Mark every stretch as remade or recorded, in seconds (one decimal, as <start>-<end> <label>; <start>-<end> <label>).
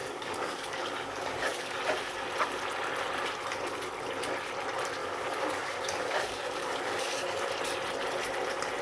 0.0-1.8 remade; 1.8-5.0 recorded; 5.0-7.5 remade; 7.5-8.8 recorded